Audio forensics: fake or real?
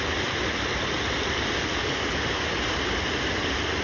real